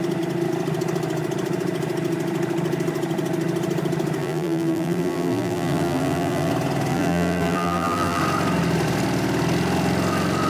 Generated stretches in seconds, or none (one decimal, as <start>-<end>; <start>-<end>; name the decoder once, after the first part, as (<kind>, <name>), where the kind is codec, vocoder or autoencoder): 4.2-6.5 (vocoder, BigVGAN v2); 6.9-8.2